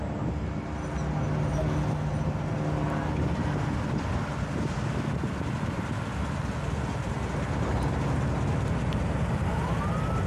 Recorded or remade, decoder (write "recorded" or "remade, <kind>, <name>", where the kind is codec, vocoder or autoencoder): recorded